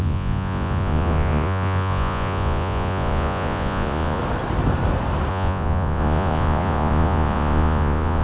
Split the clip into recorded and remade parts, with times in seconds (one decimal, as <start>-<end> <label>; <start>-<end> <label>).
0.0-4.2 remade; 4.2-5.3 recorded; 5.3-8.2 remade